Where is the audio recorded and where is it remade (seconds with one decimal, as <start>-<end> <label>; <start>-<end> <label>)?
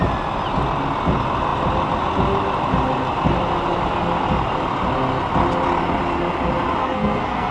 0.0-6.8 recorded; 6.8-7.5 remade